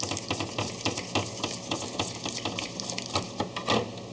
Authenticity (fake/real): real